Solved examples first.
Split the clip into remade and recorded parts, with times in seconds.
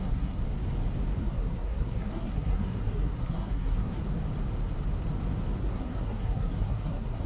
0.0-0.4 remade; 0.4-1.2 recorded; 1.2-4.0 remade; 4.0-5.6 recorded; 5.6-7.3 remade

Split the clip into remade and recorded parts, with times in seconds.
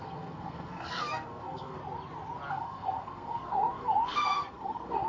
0.0-1.8 remade; 1.8-2.5 recorded; 2.5-5.1 remade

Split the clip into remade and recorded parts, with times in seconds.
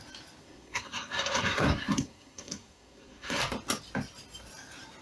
0.0-0.4 recorded; 0.4-3.4 remade; 3.4-5.0 recorded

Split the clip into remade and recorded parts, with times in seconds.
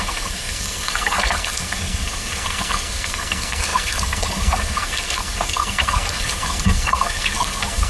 0.0-7.9 remade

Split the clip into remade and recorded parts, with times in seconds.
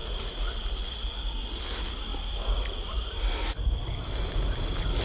0.0-5.0 recorded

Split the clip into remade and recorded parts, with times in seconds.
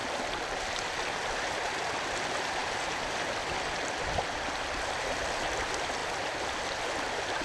0.0-7.4 recorded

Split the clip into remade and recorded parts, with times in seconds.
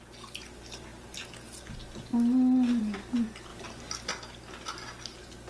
0.0-5.5 recorded